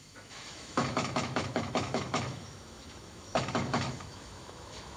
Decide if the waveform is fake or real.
fake